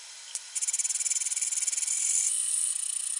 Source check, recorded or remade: recorded